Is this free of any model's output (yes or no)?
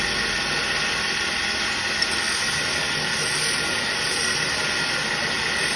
yes